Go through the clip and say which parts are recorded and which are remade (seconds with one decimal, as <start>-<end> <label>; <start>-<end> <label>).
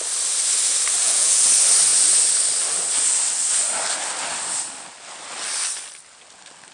0.0-1.0 recorded; 1.0-1.5 remade; 1.5-6.7 recorded